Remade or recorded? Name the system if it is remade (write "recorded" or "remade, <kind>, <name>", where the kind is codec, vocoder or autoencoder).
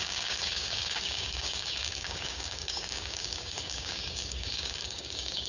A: remade, codec, DAC